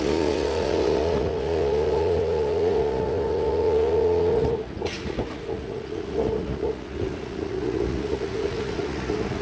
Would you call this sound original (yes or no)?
no